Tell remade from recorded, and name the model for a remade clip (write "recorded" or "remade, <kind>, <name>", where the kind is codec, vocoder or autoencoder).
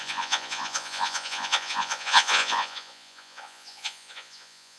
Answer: remade, vocoder, Vocos